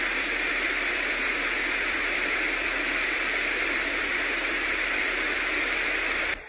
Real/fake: fake